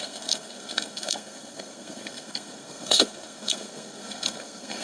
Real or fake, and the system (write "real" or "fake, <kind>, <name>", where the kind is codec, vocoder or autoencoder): fake, codec, SNAC